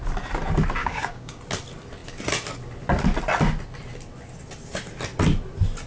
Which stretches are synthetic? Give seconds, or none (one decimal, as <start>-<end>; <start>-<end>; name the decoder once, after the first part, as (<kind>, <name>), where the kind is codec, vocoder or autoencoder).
0.8-1.4 (codec, DAC)